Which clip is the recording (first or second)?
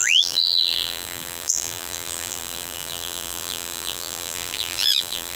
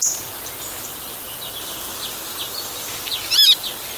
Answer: second